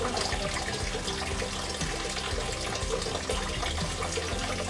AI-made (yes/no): no